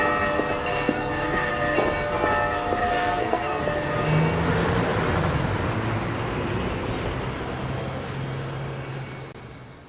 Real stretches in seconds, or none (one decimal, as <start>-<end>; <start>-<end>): 0.0-0.7; 1.5-2.8; 3.6-9.9

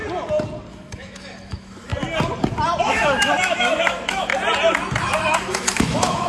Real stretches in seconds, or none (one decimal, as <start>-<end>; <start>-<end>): 0.0-0.7; 1.9-2.9; 4.3-5.0

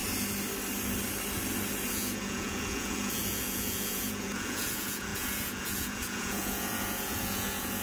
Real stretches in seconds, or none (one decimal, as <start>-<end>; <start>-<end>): 0.0-1.9